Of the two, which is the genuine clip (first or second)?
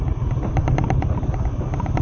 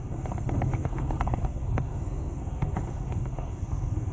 first